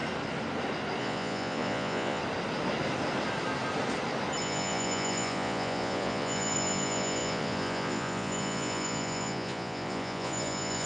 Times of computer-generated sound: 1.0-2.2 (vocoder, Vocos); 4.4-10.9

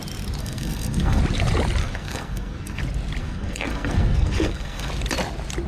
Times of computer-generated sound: 0.4-1.2 (codec, SNAC); 1.8-2.8; 3.2-4.9

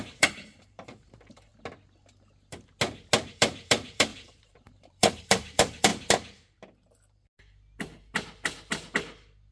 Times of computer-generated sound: 0.0-1.5 (vocoder, BigVGAN v2); 3.3-5.9